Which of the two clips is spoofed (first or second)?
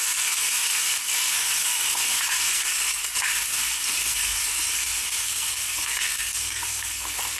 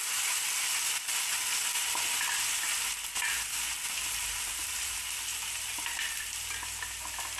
first